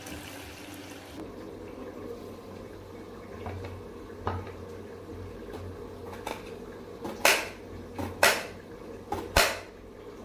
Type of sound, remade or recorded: recorded